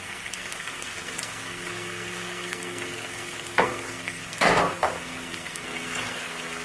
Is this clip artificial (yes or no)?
yes